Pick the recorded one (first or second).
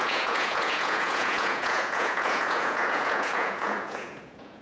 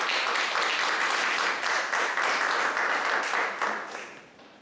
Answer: second